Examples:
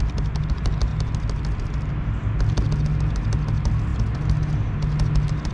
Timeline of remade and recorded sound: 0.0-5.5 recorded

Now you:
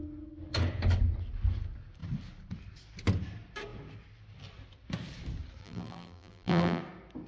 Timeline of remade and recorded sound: 0.0-5.6 recorded; 5.6-6.8 remade; 6.8-7.3 recorded

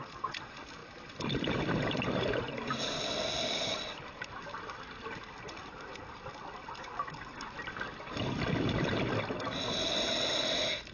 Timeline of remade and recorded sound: 0.0-0.8 recorded; 0.8-5.6 remade; 5.6-7.3 recorded; 7.3-10.0 remade; 10.0-10.9 recorded